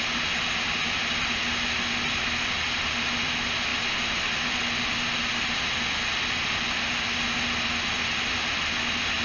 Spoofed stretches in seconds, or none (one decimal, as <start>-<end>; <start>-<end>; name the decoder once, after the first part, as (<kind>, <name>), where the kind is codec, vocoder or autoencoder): none